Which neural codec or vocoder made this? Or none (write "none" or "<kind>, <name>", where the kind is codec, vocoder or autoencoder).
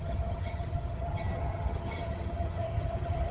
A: vocoder, HiFi-GAN